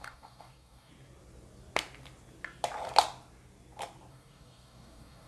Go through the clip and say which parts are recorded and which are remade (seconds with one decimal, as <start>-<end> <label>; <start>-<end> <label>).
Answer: 0.0-0.9 remade; 0.9-4.1 recorded; 4.1-5.3 remade